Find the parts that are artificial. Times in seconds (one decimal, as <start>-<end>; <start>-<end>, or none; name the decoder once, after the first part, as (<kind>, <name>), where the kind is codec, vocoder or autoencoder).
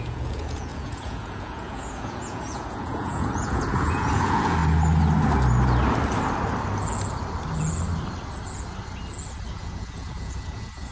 0.0-4.6 (vocoder, Vocos); 9.5-10.9